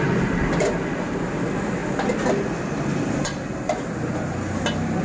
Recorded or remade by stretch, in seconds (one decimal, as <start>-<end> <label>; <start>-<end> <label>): 0.0-5.0 recorded